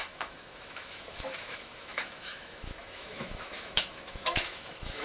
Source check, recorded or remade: remade